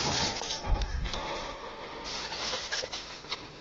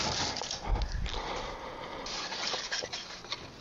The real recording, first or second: second